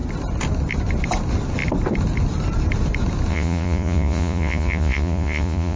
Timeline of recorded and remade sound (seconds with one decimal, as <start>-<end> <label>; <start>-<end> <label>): 0.0-3.3 recorded; 3.3-5.8 remade

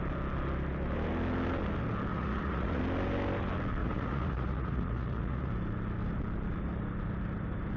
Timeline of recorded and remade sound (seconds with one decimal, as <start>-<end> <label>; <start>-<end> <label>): 0.0-2.1 recorded; 2.1-2.8 remade; 2.8-3.8 recorded; 3.8-5.5 remade; 5.5-7.8 recorded

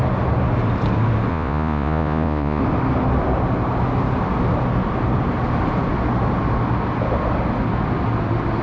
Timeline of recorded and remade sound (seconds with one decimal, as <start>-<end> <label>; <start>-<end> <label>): 0.0-1.3 recorded; 1.3-2.6 remade; 2.6-8.6 recorded